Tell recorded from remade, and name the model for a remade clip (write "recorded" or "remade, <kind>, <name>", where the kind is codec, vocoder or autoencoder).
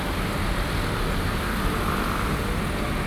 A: recorded